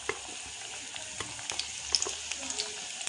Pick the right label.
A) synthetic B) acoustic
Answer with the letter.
B